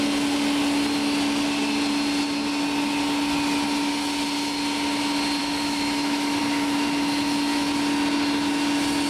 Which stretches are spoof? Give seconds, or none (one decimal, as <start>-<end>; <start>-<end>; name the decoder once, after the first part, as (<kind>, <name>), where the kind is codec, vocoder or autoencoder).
5.4-6.4 (autoencoder, DAC-VAE)